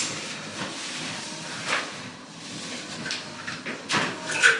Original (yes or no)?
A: no